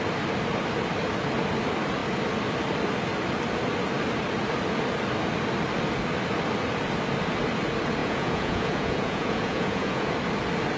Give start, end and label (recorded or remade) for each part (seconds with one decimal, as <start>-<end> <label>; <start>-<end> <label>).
0.0-8.0 recorded; 8.0-10.1 remade; 10.1-10.8 recorded